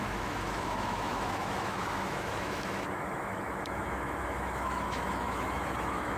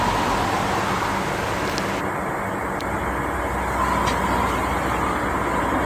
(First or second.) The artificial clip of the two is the first